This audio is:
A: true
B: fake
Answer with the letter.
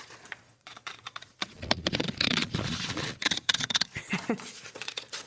B